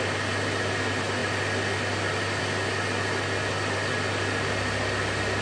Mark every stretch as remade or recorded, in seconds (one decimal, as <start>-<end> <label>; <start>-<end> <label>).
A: 0.0-5.4 recorded